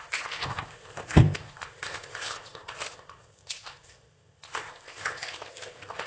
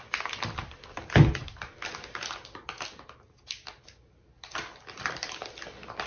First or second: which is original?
second